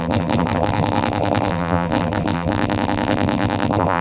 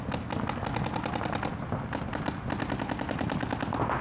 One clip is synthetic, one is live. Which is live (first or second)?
second